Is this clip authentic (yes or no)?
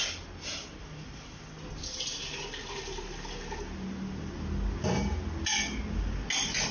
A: yes